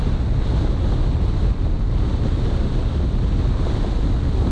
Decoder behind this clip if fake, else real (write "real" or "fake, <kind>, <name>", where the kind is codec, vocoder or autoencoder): real